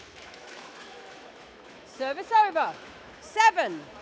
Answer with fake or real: fake